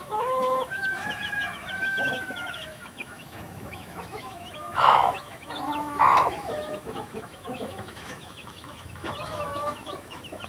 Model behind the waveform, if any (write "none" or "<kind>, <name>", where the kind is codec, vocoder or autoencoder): autoencoder, DAC-VAE